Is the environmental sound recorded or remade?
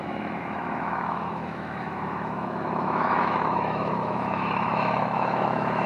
remade